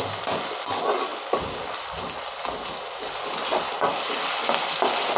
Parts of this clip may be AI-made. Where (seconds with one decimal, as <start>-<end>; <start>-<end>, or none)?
none